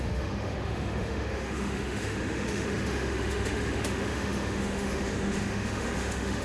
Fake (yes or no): yes